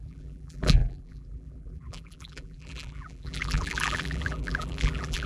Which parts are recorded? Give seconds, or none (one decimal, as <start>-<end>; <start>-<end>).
none